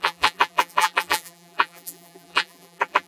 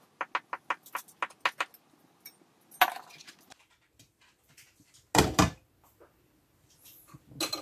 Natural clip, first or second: second